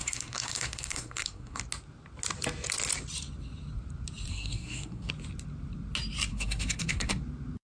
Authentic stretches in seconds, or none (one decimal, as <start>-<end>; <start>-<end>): 1.6-4.3; 5.1-6.3; 7.2-7.7